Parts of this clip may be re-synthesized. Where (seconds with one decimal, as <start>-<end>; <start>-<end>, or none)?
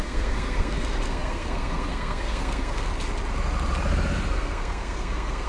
0.0-2.9; 4.3-5.5